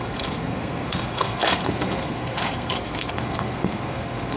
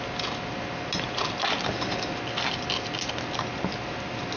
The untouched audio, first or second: second